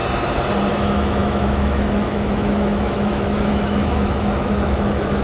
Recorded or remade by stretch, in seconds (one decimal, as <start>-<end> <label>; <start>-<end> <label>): 0.0-0.7 recorded; 0.7-5.2 remade